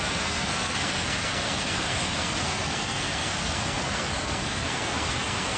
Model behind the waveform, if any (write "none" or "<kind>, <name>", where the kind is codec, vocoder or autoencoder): codec, SNAC